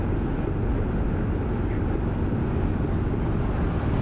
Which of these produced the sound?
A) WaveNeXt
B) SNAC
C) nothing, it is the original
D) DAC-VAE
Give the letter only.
C